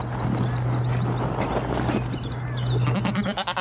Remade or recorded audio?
recorded